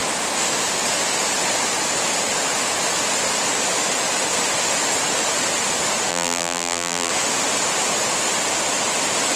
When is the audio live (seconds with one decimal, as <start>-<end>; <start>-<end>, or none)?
0.0-6.1; 7.1-9.4